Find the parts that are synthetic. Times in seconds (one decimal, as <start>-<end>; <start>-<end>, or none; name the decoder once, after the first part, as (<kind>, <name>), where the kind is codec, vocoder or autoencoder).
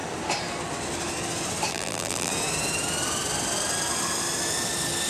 1.7-2.3 (vocoder, BigVGAN v2)